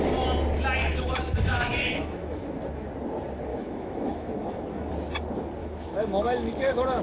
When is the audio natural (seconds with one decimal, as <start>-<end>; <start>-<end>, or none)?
0.0-0.8; 2.4-3.5; 4.9-5.6